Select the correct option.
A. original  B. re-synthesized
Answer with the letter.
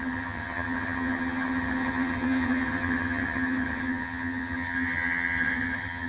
B